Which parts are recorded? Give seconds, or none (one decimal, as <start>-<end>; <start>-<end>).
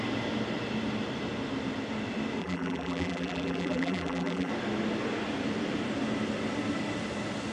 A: 0.0-2.4; 4.5-7.5